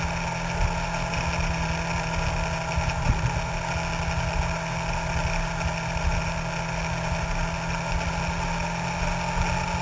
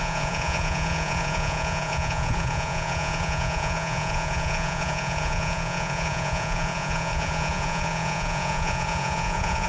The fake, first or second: second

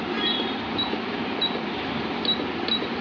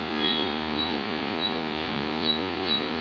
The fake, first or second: second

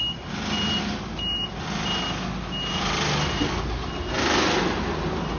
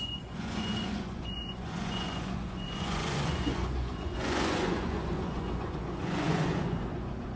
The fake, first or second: second